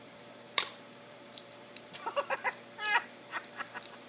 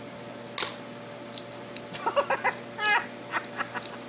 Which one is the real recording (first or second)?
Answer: second